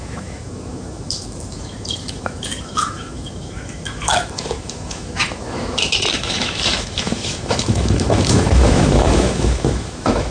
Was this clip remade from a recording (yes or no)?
yes